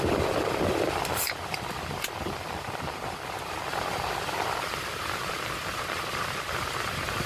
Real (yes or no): no